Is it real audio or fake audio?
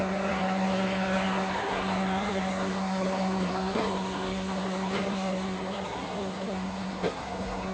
fake